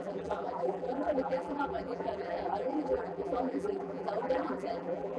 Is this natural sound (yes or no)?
no